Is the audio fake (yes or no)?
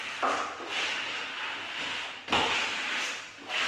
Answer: no